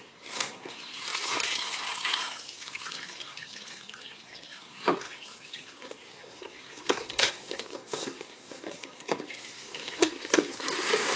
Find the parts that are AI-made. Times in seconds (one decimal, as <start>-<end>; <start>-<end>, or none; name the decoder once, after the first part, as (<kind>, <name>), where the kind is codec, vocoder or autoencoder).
0.0-11.2 (codec, SNAC)